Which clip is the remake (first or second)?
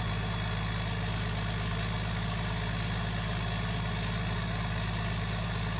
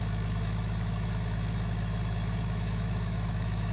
second